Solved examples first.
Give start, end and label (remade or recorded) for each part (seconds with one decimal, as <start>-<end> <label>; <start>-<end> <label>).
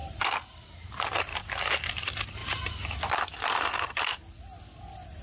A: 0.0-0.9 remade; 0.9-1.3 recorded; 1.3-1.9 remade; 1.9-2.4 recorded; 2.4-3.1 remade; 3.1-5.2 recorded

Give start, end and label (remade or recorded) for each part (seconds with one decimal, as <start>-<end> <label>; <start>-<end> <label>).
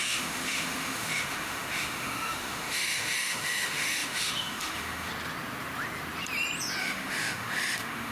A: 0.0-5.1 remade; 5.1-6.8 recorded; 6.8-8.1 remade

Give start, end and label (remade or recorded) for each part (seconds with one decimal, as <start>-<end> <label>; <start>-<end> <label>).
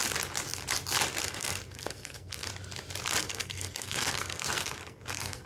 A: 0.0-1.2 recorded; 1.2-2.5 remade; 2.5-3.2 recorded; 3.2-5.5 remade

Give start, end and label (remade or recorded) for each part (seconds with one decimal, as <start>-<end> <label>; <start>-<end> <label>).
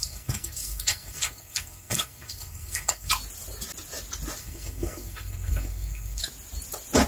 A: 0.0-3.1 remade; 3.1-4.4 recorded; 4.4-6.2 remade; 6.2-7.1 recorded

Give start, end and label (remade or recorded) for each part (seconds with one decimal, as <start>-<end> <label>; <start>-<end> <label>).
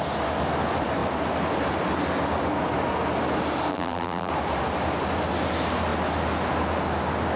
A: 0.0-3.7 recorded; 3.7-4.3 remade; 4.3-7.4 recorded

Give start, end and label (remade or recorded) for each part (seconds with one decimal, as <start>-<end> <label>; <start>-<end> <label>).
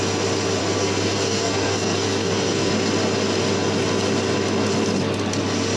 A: 0.0-0.6 recorded; 0.6-2.7 remade; 2.7-5.8 recorded